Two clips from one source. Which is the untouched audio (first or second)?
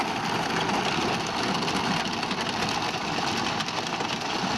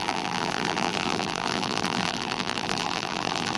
first